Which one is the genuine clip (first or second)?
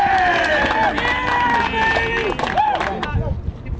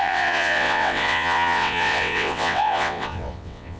first